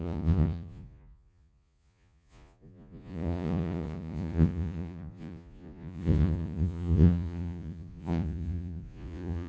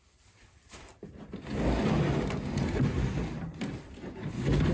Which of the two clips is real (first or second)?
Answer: second